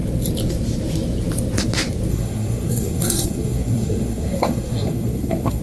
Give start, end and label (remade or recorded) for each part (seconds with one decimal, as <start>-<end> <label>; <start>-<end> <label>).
0.0-2.1 recorded; 2.1-5.6 remade